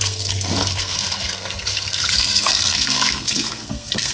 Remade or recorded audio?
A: remade